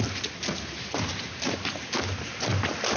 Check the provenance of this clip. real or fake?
real